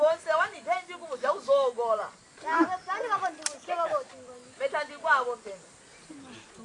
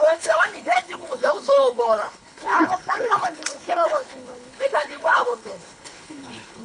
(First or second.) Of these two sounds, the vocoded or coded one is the second